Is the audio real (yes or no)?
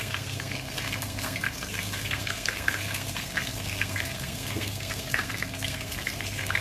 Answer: no